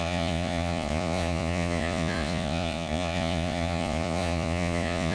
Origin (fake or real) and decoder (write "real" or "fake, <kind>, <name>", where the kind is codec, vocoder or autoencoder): fake, vocoder, Vocos